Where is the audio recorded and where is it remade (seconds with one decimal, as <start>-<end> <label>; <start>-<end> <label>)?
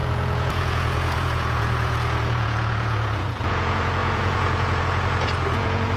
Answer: 0.0-6.0 remade